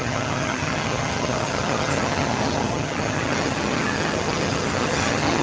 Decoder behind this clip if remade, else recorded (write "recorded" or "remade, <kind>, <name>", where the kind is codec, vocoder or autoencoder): remade, vocoder, HiFi-GAN